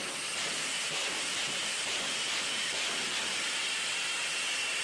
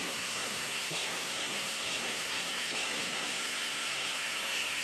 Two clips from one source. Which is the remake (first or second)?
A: second